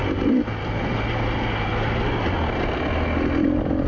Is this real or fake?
real